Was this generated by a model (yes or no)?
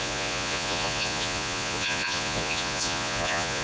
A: yes